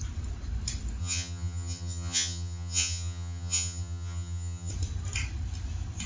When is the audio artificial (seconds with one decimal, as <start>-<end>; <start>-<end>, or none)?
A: 1.0-4.7